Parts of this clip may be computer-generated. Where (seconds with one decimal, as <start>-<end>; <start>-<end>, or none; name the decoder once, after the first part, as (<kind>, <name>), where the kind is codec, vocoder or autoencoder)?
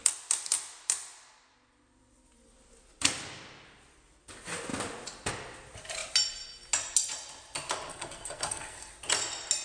7.9-8.9 (codec, SNAC)